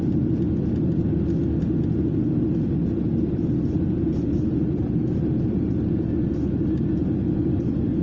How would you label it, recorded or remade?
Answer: recorded